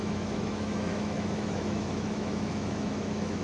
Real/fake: fake